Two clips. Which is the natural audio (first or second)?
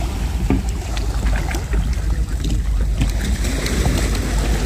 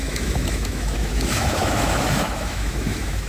first